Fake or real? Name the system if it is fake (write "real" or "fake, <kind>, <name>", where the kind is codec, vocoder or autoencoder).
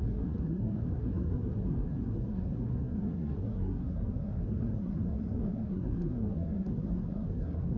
fake, codec, SNAC